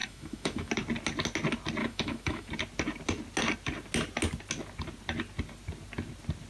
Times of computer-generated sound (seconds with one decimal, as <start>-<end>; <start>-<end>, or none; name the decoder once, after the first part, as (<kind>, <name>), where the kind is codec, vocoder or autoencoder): 0.0-0.7 (autoencoder, DAC-VAE); 1.8-2.5